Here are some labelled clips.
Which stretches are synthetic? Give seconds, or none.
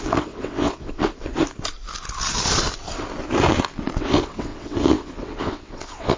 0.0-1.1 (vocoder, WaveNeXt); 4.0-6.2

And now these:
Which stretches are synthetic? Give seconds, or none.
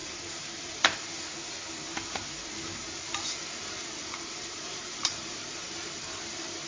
0.0-1.0 (vocoder, BigVGAN v2); 4.0-5.7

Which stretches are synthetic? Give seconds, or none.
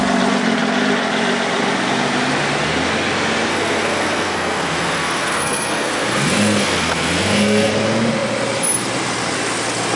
3.5-7.7 (codec, SNAC)